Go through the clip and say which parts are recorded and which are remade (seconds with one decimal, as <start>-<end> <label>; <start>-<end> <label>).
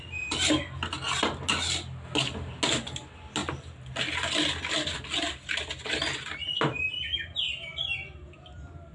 0.0-8.9 recorded